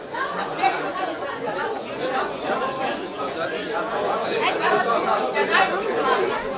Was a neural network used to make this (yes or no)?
yes